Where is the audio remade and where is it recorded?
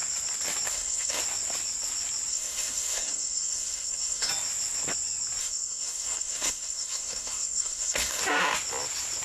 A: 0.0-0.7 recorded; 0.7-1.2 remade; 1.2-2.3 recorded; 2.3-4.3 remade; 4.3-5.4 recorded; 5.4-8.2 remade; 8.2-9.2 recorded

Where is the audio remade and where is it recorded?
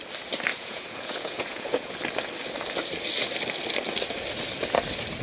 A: 0.0-0.5 recorded; 0.5-1.9 remade; 1.9-5.2 recorded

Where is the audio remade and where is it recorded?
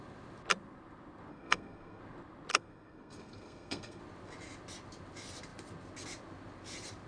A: 0.0-1.3 recorded; 1.3-2.0 remade; 2.0-2.5 recorded; 2.5-4.0 remade; 4.0-7.1 recorded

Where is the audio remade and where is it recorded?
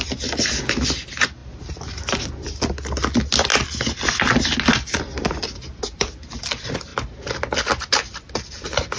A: 0.0-9.0 recorded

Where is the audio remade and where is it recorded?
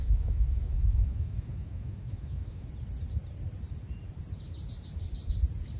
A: 0.0-2.7 remade; 2.7-5.8 recorded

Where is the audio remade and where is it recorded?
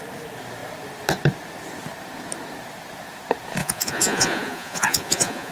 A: 0.0-3.6 recorded; 3.6-5.5 remade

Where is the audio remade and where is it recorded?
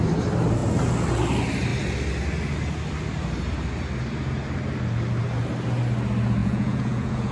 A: 0.0-6.4 recorded; 6.4-7.3 remade